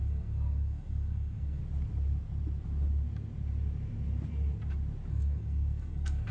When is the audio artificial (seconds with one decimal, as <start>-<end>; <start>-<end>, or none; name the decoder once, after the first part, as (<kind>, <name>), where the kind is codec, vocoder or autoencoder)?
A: 0.0-1.6 (codec, SNAC); 5.1-6.3